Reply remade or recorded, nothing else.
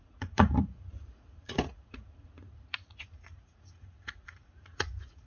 remade